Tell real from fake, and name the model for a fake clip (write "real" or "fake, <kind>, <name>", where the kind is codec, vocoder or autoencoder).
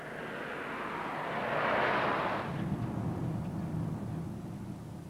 real